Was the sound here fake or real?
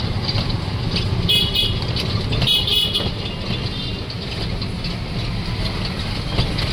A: real